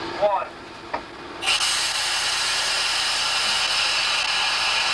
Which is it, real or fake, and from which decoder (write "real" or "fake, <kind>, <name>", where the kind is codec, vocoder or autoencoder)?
real